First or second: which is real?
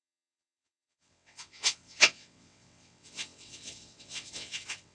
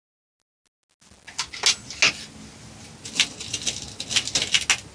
second